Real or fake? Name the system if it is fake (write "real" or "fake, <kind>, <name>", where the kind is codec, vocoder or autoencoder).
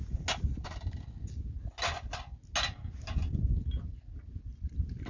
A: real